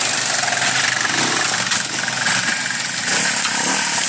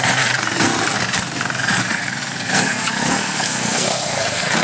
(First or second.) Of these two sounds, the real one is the first